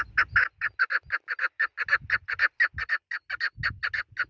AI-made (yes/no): no